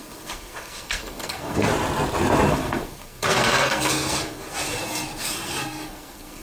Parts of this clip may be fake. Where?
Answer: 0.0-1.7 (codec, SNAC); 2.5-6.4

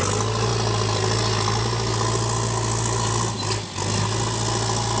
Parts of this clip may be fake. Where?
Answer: none

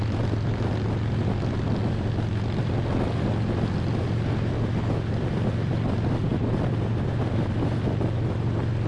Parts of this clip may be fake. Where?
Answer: none

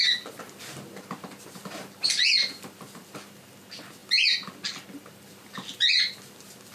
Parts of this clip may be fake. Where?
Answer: none

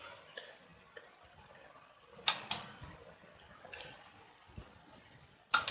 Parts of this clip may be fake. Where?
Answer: none

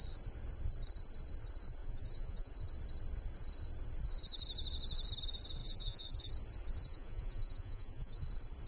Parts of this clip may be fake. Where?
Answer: 1.8-2.5 (vocoder, Vocos); 5.6-6.3; 6.9-8.2